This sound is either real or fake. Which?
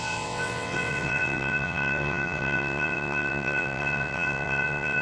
fake